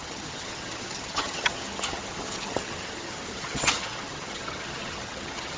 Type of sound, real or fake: fake